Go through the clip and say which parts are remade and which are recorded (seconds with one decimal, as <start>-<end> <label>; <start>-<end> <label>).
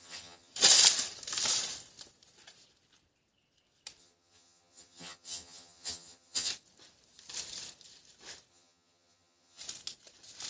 0.0-0.5 remade; 0.5-4.0 recorded; 4.0-6.5 remade; 6.5-8.5 recorded; 8.5-9.6 remade; 9.6-10.5 recorded